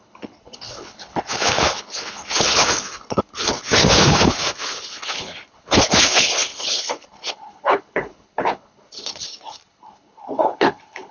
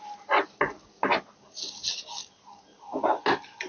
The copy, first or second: first